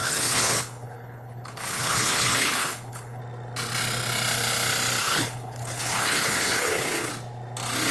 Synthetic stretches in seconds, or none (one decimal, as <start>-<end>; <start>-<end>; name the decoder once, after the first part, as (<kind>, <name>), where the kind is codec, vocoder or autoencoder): 0.0-3.2 (codec, HILCodec); 5.0-7.1